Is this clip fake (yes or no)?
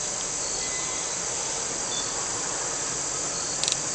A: no